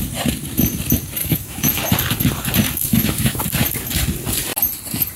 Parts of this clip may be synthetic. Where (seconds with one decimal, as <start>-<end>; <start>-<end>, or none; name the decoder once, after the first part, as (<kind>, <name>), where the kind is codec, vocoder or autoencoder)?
1.2-1.8 (autoencoder, DAC-VAE); 2.8-3.4